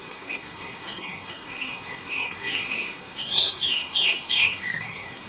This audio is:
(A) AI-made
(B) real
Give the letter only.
A